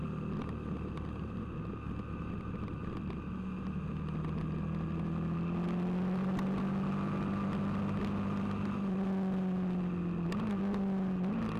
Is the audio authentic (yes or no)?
yes